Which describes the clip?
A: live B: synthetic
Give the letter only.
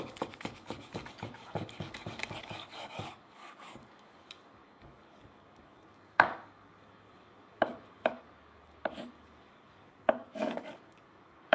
B